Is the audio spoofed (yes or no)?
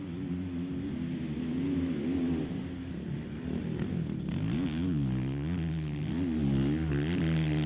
no